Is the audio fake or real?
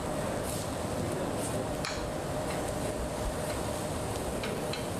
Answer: real